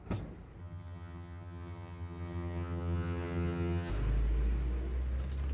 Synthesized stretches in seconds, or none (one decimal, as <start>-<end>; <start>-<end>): 0.6-3.9